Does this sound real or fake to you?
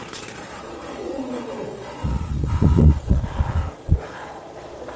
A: fake